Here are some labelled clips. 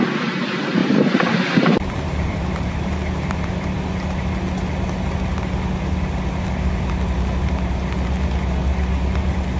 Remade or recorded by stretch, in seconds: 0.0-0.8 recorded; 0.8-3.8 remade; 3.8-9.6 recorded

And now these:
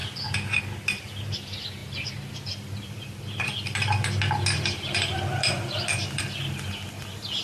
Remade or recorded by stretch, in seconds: 0.0-0.6 remade; 0.6-1.8 recorded; 1.8-6.2 remade; 6.2-7.4 recorded

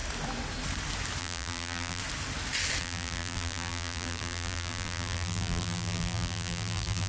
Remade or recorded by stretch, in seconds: 0.0-1.2 recorded; 1.2-2.0 remade; 2.0-2.8 recorded; 2.8-7.1 remade